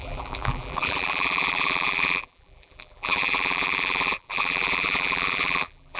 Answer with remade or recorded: remade